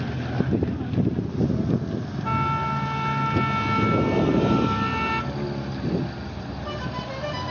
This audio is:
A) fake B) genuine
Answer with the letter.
B